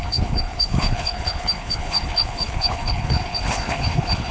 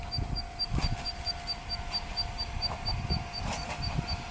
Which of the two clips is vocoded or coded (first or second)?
first